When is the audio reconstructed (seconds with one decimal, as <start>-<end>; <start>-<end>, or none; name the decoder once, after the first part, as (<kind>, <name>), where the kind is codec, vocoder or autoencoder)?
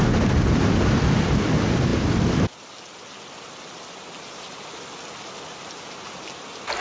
none